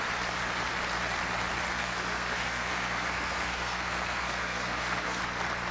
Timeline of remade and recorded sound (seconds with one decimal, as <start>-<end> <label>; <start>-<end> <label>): 0.0-1.8 recorded; 1.8-5.2 remade; 5.2-5.7 recorded